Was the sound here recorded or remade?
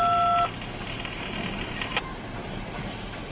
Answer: recorded